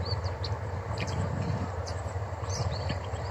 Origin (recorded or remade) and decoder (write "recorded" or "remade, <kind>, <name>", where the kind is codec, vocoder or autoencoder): remade, vocoder, BigVGAN v2